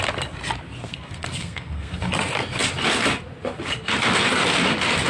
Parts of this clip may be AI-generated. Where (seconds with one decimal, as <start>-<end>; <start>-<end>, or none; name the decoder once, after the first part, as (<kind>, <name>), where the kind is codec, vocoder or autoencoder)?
0.8-2.1 (codec, SNAC)